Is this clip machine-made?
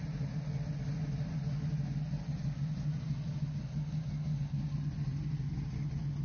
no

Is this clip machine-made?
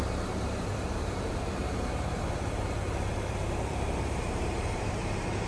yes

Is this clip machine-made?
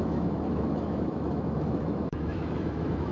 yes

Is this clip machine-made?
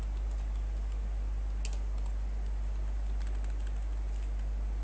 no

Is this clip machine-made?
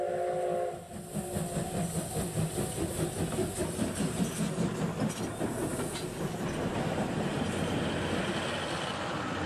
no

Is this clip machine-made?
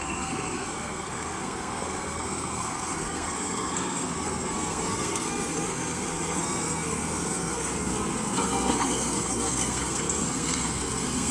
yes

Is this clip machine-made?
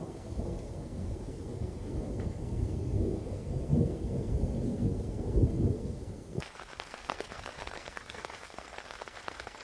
yes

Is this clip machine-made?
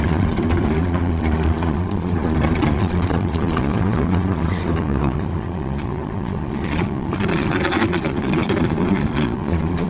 yes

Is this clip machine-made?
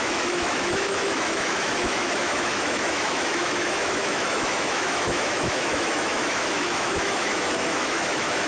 yes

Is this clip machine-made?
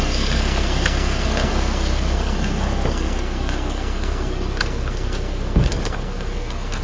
yes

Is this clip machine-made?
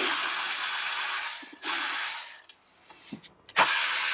no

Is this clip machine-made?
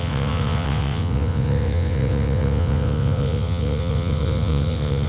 yes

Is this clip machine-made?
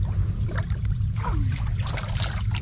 yes